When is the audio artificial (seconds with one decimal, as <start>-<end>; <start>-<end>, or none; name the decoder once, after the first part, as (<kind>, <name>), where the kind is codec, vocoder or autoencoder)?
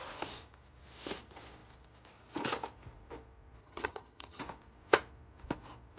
3.6-4.4 (vocoder, HiFi-GAN)